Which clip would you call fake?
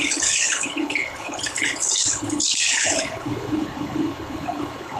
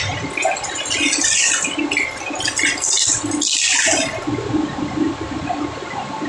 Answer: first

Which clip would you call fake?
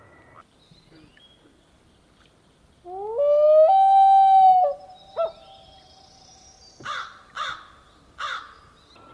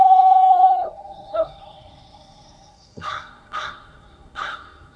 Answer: second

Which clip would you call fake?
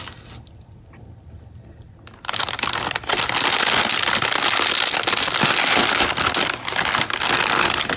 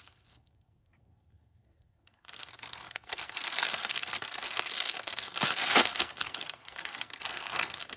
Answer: second